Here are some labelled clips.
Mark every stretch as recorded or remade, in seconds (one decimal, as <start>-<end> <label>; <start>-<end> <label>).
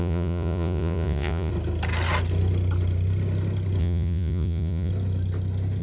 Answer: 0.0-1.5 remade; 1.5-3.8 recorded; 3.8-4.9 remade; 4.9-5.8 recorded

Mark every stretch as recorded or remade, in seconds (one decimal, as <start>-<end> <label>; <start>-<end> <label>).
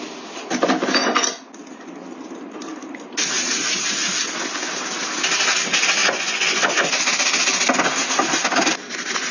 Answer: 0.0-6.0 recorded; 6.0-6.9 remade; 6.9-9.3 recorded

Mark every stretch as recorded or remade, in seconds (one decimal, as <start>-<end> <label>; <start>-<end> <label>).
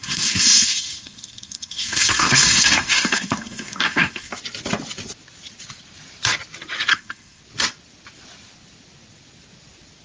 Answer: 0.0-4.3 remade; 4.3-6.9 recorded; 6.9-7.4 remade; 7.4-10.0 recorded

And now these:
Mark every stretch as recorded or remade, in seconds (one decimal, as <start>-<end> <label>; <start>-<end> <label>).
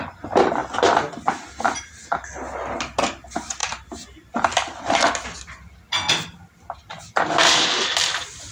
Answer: 0.0-8.5 recorded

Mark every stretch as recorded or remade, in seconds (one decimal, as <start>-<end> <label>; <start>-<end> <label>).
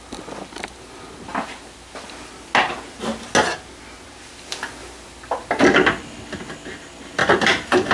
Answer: 0.0-7.2 recorded; 7.2-7.9 remade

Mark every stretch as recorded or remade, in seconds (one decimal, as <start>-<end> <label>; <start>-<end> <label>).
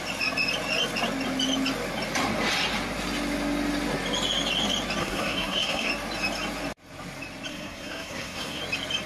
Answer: 0.0-5.0 recorded; 5.0-5.9 remade; 5.9-7.5 recorded; 7.5-8.6 remade; 8.6-9.1 recorded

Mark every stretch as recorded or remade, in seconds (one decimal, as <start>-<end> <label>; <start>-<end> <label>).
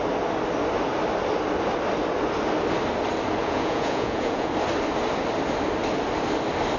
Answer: 0.0-3.4 recorded; 3.4-4.5 remade; 4.5-6.8 recorded